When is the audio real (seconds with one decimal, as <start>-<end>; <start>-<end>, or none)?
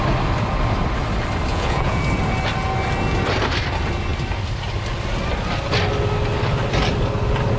0.0-1.5; 2.0-7.6